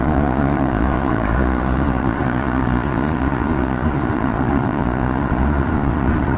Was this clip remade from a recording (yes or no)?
yes